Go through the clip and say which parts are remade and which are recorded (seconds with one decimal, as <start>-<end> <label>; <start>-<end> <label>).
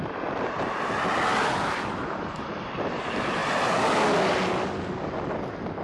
0.0-5.8 recorded